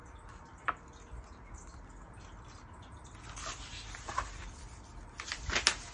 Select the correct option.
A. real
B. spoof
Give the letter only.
A